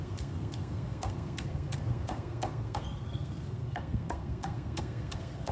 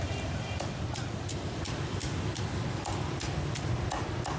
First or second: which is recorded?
second